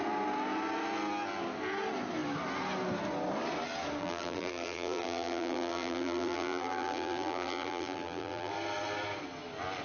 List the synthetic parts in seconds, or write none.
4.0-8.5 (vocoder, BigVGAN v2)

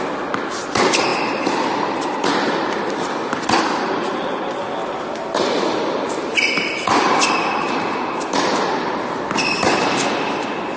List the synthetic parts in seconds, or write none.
1.1-3.6 (vocoder, BigVGAN v2); 4.1-6.7

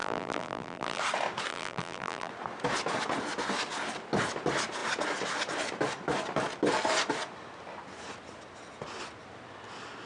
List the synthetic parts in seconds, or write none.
0.0-1.0 (vocoder, BigVGAN v2); 1.5-2.3